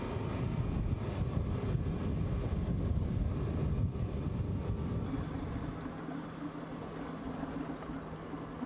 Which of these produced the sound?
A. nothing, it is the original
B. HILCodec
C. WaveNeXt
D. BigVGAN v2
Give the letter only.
A